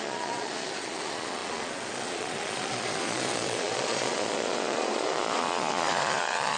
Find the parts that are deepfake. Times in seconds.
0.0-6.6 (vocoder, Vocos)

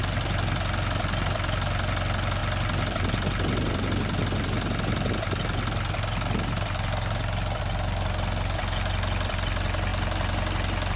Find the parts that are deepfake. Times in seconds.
none